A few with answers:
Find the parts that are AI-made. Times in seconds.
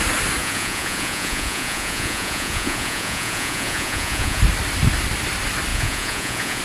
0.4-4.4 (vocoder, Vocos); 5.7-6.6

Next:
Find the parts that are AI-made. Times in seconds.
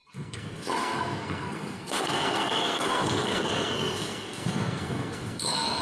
0.0-5.8 (codec, SNAC)